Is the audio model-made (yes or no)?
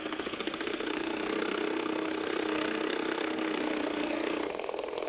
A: yes